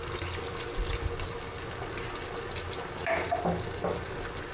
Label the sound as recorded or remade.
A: recorded